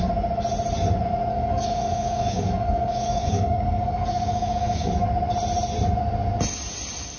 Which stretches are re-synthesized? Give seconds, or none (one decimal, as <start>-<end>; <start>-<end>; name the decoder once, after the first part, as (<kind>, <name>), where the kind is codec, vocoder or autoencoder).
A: 1.3-4.9 (codec, DAC)